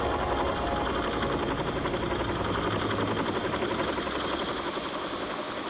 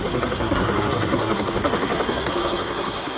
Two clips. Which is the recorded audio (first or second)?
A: first